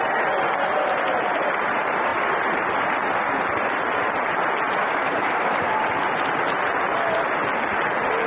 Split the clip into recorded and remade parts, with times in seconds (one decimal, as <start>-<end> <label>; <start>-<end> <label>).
0.0-4.8 recorded; 4.8-5.8 remade; 5.8-8.3 recorded